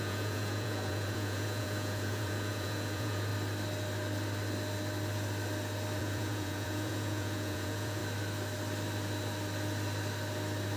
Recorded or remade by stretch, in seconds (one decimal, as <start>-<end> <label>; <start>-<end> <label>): 0.0-3.3 remade; 3.3-6.0 recorded; 6.0-8.0 remade; 8.0-10.8 recorded